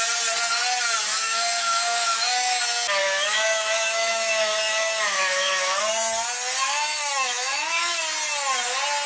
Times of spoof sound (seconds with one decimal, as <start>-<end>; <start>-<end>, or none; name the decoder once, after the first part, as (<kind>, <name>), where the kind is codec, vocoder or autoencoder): 1.1-2.6 (autoencoder, DAC-VAE); 3.0-5.8; 6.6-8.0